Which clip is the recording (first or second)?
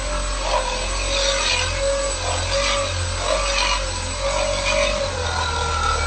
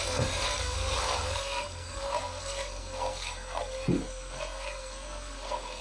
first